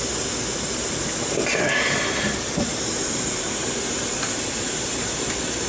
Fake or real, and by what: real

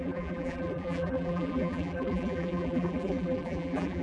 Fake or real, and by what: fake, vocoder, BigVGAN v2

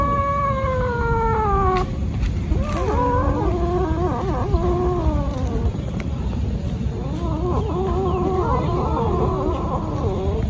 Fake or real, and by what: real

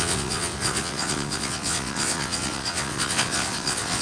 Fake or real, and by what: fake, vocoder, WaveNeXt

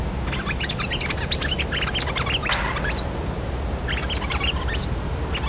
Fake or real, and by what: real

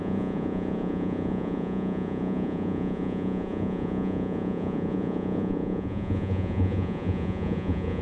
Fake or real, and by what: fake, vocoder, Vocos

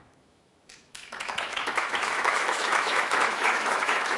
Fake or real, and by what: fake, autoencoder, DAC-VAE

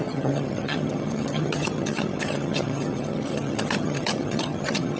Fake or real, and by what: fake, vocoder, HiFi-GAN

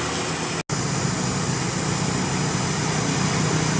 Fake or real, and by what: real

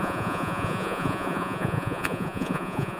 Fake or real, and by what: fake, vocoder, Vocos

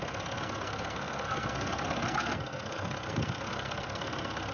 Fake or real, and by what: fake, codec, SNAC